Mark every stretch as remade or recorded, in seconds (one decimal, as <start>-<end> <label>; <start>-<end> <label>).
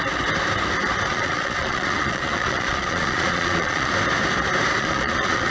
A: 0.0-1.1 recorded; 1.1-3.9 remade; 3.9-4.8 recorded; 4.8-5.5 remade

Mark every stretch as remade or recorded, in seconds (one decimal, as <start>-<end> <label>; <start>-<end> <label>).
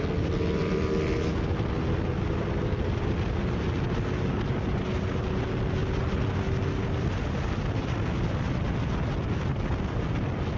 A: 0.0-10.6 recorded